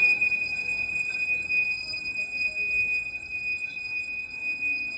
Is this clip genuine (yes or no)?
no